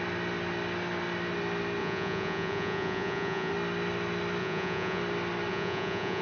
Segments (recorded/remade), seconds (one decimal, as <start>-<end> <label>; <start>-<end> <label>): 0.0-1.8 recorded; 1.8-3.5 remade; 3.5-4.4 recorded; 4.4-5.0 remade; 5.0-5.5 recorded; 5.5-6.2 remade